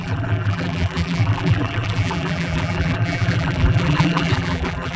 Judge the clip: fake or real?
fake